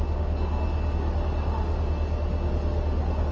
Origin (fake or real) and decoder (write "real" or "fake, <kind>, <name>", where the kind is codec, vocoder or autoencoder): real